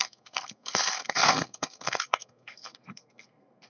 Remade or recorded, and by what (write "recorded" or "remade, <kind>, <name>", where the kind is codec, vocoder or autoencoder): remade, codec, SNAC